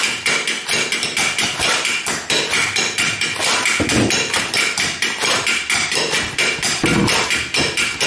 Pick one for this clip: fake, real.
real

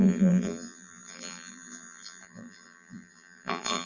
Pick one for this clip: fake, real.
fake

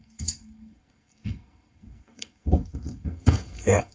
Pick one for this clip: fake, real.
fake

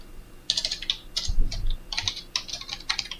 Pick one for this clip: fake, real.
real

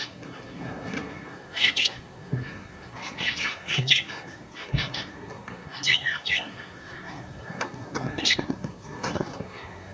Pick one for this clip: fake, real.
fake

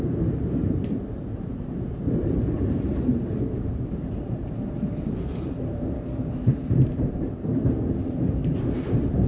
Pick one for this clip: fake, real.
fake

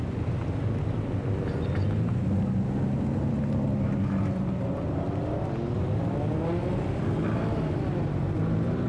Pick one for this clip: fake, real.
real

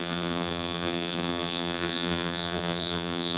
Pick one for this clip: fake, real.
fake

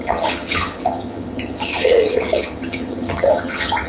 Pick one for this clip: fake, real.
fake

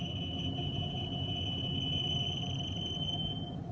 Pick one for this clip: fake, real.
real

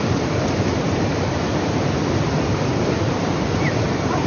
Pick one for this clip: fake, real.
fake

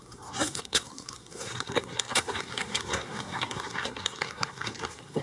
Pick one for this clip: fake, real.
fake